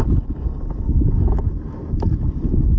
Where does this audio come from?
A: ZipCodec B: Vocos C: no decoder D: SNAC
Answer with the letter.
C